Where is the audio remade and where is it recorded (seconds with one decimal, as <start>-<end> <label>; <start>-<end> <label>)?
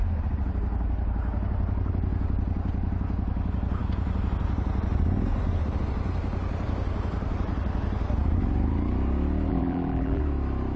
0.0-9.5 recorded; 9.5-10.2 remade; 10.2-10.8 recorded